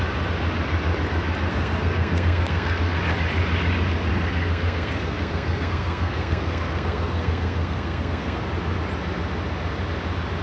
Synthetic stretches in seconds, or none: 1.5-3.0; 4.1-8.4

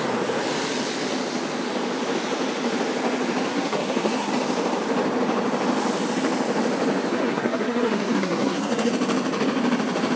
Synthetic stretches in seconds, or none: 3.5-4.3; 7.1-8.9

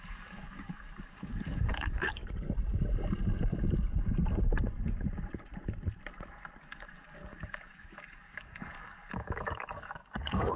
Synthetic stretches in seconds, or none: 0.0-2.2; 6.6-10.6

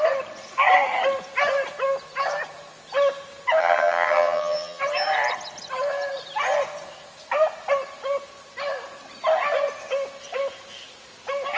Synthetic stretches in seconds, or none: 3.6-4.8

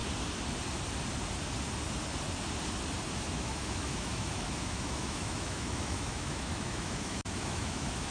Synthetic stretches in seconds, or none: 3.3-8.1

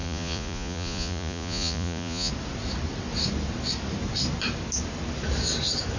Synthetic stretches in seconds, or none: 0.0-2.3

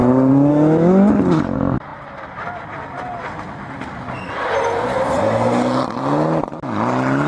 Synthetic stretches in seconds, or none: 0.0-0.5

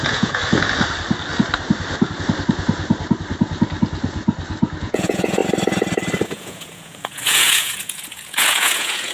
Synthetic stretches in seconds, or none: 0.0-0.4; 4.8-5.4; 6.3-9.1